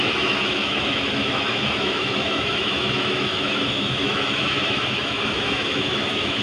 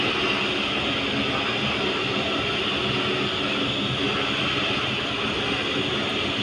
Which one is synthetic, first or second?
first